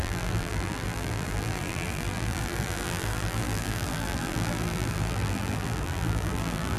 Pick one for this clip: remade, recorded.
remade